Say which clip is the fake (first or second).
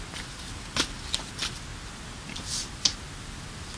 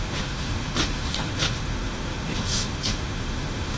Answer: second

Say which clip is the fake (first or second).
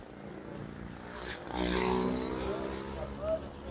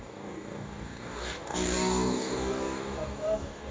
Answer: second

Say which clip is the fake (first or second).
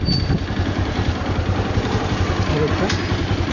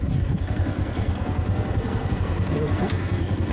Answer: second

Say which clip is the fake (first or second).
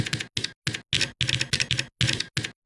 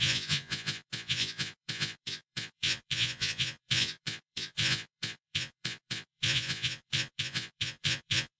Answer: second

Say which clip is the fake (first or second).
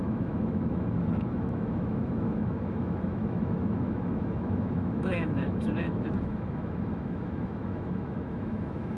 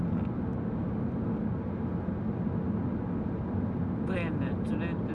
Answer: first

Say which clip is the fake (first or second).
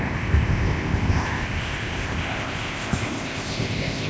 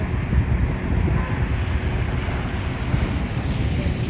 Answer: first